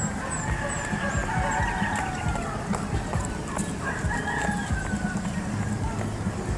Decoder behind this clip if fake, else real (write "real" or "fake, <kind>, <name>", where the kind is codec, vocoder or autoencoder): real